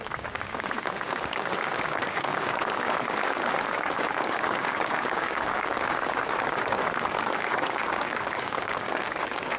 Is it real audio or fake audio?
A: fake